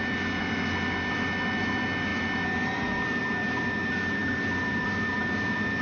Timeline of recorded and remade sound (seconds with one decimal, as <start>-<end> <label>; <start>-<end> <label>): 0.0-5.8 recorded